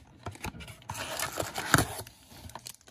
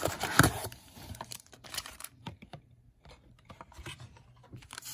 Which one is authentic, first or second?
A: first